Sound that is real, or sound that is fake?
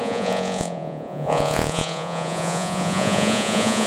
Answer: fake